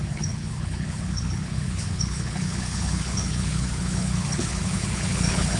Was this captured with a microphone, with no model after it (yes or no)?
no